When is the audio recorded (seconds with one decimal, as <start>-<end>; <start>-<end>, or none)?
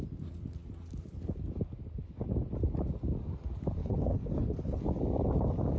0.0-3.8; 4.8-5.8